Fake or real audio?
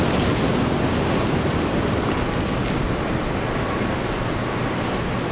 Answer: real